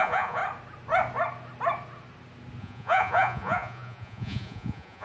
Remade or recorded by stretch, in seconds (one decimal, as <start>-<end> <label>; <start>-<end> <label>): 0.0-0.4 remade; 0.4-2.6 recorded; 2.6-5.0 remade